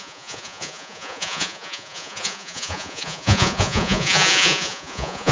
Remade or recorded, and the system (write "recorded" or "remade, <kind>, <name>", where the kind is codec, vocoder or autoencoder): remade, vocoder, Vocos